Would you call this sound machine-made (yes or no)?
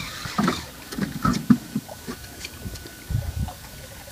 yes